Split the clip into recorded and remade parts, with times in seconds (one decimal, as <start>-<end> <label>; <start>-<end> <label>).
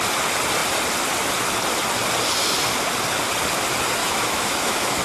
0.0-4.0 recorded; 4.0-5.0 remade